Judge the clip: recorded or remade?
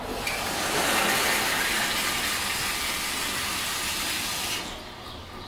recorded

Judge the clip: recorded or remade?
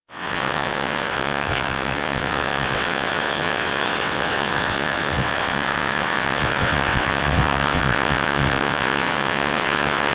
remade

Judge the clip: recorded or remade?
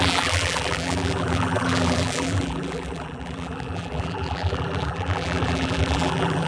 remade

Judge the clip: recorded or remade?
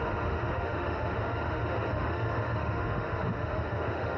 remade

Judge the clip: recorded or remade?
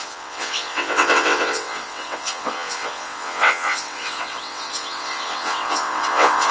remade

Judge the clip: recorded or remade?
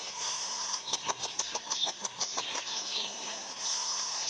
remade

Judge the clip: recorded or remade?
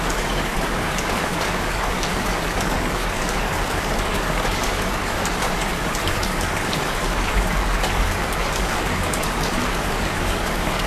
remade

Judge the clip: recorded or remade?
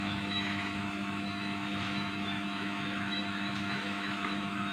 remade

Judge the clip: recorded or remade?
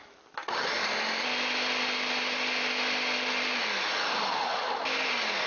recorded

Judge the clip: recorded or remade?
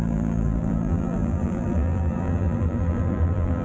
remade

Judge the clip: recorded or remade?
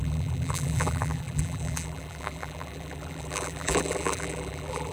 remade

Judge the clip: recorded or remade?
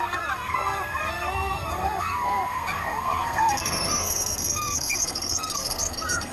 remade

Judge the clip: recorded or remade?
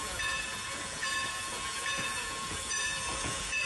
remade